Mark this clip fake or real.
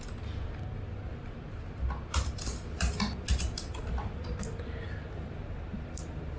real